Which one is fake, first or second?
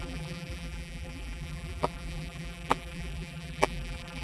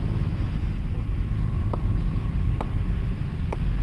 first